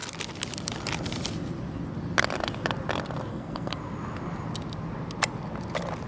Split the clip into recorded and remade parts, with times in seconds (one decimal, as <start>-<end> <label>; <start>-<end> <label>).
0.0-3.3 recorded; 3.3-3.8 remade; 3.8-6.1 recorded